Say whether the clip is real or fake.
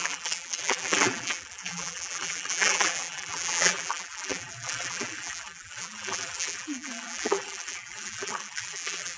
fake